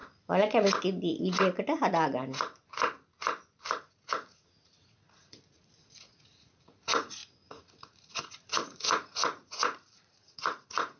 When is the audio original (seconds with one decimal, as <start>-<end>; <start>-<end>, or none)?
0.0-3.9